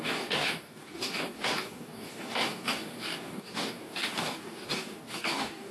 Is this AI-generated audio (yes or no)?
yes